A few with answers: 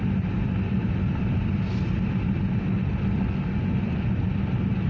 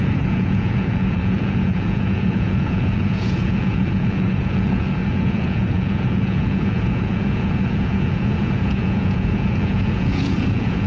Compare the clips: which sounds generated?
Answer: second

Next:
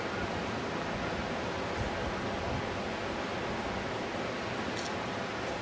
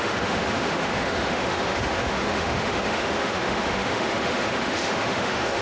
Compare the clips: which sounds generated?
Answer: second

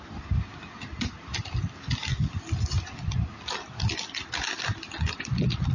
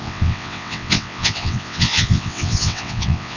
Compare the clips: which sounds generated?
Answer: second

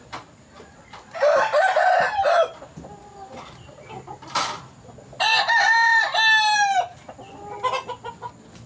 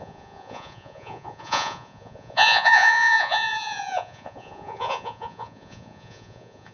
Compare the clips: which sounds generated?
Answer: second